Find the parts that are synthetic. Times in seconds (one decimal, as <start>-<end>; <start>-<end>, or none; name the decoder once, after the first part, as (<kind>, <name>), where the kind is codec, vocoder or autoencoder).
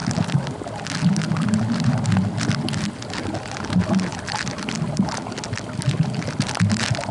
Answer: 4.1-5.1 (vocoder, BigVGAN v2)